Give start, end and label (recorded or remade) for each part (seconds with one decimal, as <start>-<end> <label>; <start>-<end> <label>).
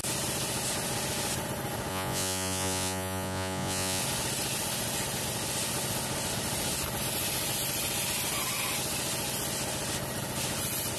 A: 0.0-1.9 recorded; 1.9-4.0 remade; 4.0-11.0 recorded